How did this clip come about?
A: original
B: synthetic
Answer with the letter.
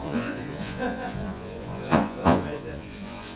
B